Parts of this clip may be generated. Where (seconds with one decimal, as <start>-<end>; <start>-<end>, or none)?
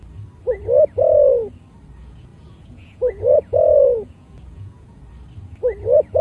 2.0-5.1